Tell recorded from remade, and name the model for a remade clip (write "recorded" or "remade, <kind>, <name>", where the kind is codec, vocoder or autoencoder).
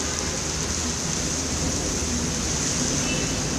recorded